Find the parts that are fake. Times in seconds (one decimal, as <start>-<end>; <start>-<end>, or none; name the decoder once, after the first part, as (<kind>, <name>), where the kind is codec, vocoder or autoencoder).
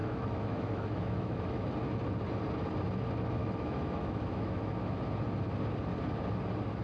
0.0-1.7 (autoencoder, DAC-VAE); 3.4-5.0